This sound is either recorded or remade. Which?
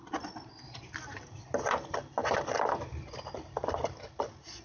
recorded